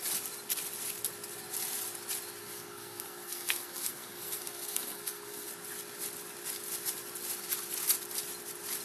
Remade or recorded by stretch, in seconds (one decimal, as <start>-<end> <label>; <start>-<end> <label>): 0.0-2.4 recorded; 2.4-5.5 remade; 5.5-8.8 recorded